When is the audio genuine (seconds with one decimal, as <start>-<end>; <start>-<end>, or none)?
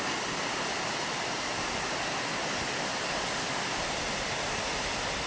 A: 0.0-5.3